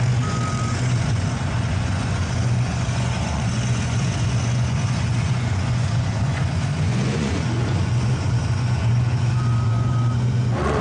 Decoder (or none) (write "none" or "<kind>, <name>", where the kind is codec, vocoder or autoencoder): vocoder, Vocos